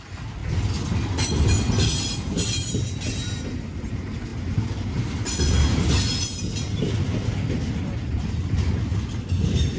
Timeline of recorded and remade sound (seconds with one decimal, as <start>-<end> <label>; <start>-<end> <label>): 0.0-9.8 recorded